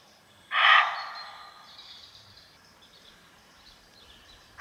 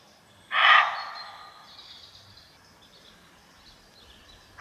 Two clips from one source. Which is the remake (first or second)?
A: first